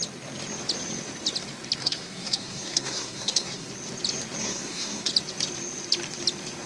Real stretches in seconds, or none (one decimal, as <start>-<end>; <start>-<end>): 0.0-1.8; 3.7-4.4; 5.1-6.7